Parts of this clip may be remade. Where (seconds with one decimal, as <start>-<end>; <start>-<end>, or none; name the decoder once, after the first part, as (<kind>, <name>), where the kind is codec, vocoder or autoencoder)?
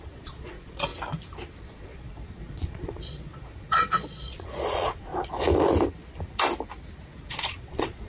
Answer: 0.0-0.9 (vocoder, Vocos); 1.6-5.1; 7.3-8.1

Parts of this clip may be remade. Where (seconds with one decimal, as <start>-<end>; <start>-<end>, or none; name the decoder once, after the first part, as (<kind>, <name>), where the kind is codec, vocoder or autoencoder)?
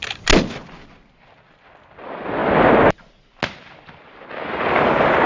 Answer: none